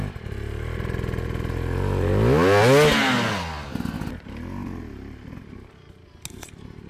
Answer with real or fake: real